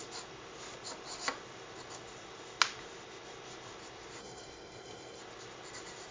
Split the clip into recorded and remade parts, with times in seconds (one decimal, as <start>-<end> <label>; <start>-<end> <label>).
0.0-4.2 recorded; 4.2-5.2 remade; 5.2-6.1 recorded